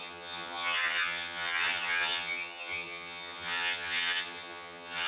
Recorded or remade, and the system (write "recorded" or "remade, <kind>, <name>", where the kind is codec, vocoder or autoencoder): remade, vocoder, HiFi-GAN